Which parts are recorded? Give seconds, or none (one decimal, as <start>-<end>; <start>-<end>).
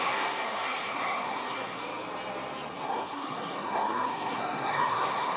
1.8-2.7